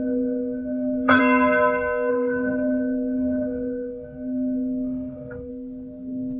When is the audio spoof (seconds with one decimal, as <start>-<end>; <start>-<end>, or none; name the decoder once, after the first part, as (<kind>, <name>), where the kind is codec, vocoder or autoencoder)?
0.0-1.2 (codec, SNAC); 2.1-5.5